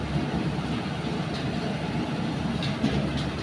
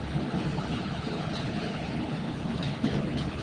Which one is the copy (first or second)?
second